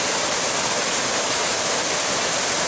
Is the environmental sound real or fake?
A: real